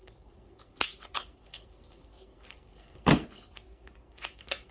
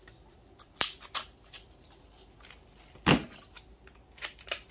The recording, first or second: second